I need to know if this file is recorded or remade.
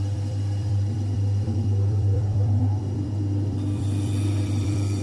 remade